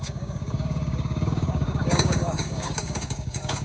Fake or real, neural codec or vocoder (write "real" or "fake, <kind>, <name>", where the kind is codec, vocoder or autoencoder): fake, codec, DAC